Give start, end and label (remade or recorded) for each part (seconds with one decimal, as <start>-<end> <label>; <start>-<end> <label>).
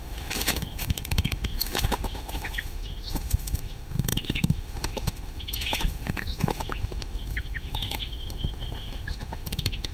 0.0-9.9 remade